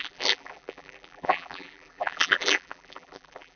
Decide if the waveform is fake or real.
fake